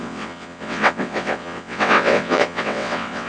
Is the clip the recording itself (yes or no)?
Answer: no